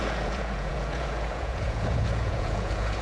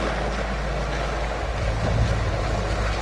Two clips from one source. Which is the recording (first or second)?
second